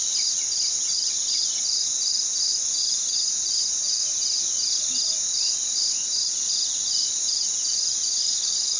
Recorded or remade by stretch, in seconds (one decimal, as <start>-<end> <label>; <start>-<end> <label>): 0.0-8.2 recorded; 8.2-8.8 remade